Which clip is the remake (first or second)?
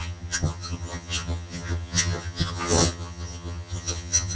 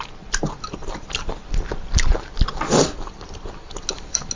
first